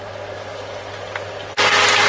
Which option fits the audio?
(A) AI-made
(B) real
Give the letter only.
B